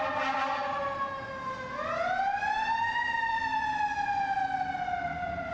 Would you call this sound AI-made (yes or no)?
no